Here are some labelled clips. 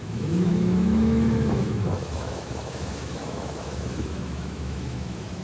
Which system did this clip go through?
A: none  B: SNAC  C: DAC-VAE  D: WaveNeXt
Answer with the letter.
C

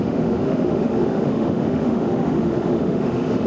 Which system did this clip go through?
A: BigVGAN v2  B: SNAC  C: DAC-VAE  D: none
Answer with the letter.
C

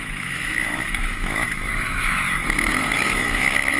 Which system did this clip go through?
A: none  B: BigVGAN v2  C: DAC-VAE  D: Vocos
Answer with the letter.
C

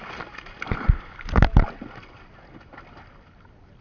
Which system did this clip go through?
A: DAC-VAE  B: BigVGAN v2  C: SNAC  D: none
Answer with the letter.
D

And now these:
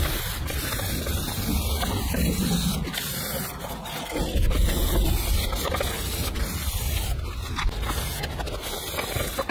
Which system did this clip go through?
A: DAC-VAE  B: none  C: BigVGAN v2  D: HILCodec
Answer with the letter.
B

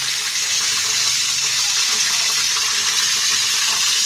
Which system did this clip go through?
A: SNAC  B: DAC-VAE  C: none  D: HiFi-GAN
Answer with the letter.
C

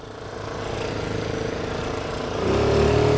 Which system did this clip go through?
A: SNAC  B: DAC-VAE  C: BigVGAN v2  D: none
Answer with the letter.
D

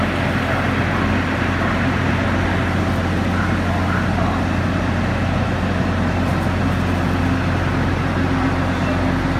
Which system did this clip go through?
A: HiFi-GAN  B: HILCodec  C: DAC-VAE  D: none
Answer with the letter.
D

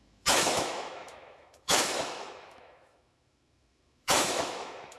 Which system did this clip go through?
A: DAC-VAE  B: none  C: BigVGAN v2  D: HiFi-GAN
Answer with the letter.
A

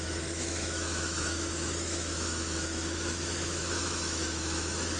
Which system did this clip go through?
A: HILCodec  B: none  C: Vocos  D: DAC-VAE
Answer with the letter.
D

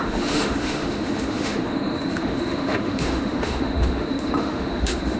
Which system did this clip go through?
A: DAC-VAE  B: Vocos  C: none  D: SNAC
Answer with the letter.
A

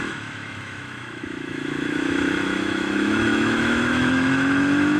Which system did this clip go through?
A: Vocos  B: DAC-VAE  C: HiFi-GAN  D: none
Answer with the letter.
B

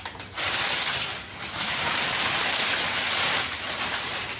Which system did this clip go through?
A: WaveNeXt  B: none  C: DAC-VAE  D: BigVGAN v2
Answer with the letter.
B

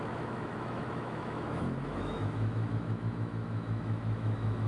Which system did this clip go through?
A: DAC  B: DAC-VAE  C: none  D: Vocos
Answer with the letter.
B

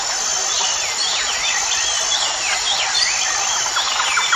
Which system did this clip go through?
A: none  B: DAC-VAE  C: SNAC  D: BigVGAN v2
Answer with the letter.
A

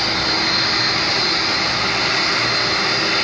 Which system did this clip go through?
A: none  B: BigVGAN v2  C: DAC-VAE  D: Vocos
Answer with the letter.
A